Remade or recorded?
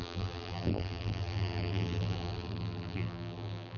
remade